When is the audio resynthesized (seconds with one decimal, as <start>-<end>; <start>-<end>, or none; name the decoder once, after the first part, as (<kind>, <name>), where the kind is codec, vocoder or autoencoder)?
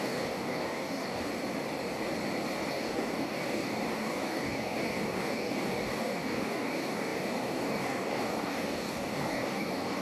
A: 0.0-1.3 (codec, DAC); 2.7-10.0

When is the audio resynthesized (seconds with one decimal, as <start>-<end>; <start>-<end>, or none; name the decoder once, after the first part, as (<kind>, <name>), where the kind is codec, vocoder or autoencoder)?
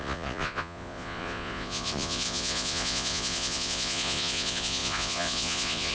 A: 0.0-5.9 (vocoder, Vocos)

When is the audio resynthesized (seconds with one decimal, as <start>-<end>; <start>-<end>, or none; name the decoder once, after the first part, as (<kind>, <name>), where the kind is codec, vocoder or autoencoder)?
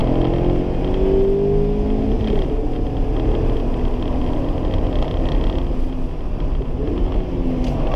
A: none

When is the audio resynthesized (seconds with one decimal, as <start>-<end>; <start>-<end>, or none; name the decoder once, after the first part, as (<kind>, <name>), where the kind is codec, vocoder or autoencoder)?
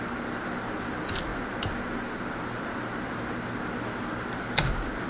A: 0.0-1.3 (vocoder, BigVGAN v2); 1.9-5.1